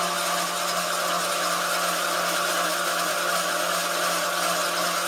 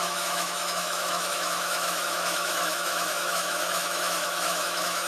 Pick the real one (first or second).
first